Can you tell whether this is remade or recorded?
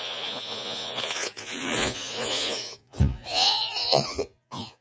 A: remade